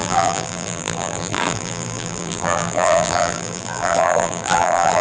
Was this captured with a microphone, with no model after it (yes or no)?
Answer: no